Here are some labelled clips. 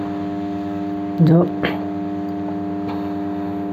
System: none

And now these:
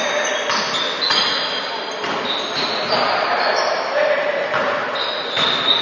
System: none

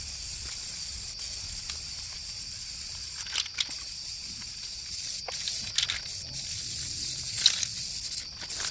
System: none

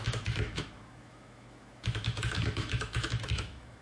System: autoencoder, DAC-VAE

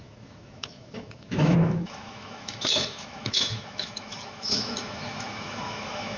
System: autoencoder, DAC-VAE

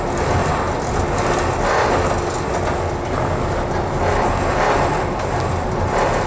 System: none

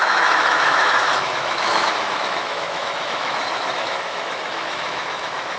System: autoencoder, DAC-VAE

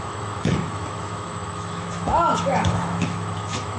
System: autoencoder, DAC-VAE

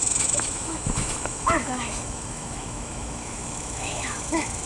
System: autoencoder, DAC-VAE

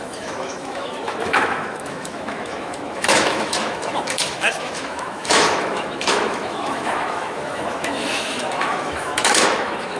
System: autoencoder, DAC-VAE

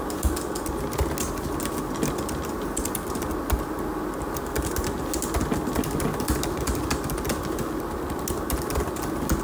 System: none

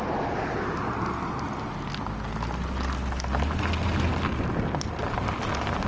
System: none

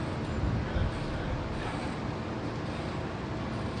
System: none